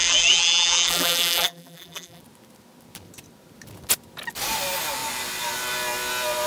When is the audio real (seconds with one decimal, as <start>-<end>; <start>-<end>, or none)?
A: 2.2-6.5